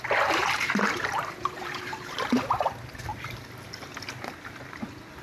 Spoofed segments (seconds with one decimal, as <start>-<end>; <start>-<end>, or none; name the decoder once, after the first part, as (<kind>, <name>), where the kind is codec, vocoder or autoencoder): 0.4-2.0 (vocoder, BigVGAN v2); 3.1-3.9